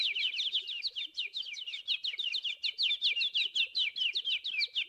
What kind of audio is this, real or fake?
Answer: real